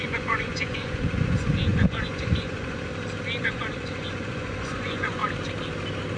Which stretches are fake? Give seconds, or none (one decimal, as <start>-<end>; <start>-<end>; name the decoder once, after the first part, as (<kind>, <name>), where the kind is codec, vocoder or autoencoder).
0.0-2.9 (vocoder, Vocos); 3.4-5.2